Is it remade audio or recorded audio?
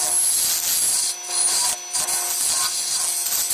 recorded